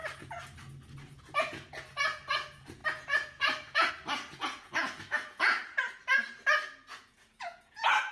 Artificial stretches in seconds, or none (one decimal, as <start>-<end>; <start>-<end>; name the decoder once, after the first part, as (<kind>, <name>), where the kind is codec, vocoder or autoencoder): 1.1-5.6 (vocoder, Vocos); 6.9-8.1